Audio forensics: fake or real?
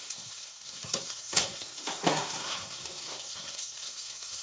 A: fake